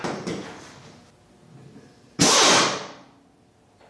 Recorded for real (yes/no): yes